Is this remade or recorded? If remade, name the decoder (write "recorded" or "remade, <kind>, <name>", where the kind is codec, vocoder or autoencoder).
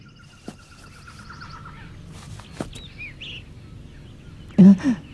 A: recorded